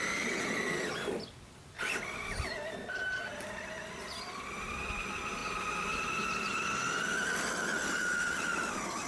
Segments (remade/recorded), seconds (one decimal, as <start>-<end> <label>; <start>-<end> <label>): 0.0-9.1 recorded